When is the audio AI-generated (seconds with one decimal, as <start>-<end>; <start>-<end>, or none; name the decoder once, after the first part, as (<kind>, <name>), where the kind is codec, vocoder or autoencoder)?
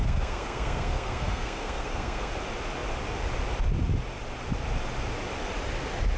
0.0-2.3 (codec, SNAC)